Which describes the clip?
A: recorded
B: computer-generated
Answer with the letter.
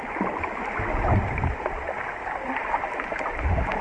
A